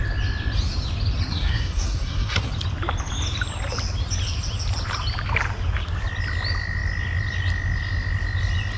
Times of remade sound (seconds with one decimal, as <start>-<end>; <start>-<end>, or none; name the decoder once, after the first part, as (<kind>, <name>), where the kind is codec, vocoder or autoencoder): 1.3-2.5 (codec, SNAC)